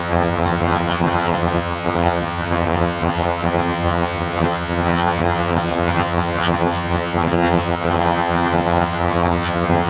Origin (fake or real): fake